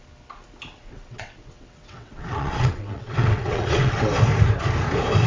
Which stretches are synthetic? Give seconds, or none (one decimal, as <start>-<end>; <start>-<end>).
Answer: 0.8-4.0